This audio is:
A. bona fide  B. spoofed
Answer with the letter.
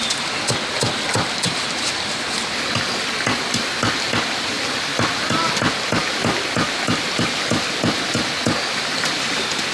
A